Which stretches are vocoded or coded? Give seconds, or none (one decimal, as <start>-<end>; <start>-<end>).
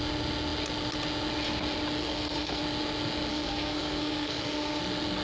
2.0-2.6; 3.3-4.8